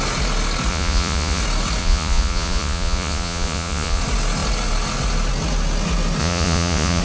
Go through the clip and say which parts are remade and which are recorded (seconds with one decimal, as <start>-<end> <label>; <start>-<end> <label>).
0.0-0.7 recorded; 0.7-1.4 remade; 1.4-1.8 recorded; 1.8-4.0 remade; 4.0-6.2 recorded; 6.2-7.0 remade